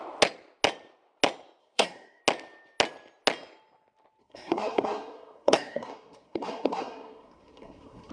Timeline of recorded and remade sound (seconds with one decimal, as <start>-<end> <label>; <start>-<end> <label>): 0.0-1.6 recorded; 1.6-2.2 remade; 2.2-4.2 recorded; 4.2-8.1 remade